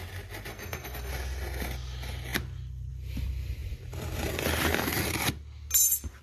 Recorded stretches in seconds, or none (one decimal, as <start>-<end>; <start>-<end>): 0.0-0.5; 1.1-6.2

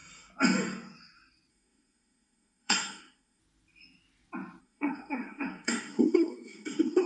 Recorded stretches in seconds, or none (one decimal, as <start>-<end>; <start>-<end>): 0.0-1.5; 3.4-4.6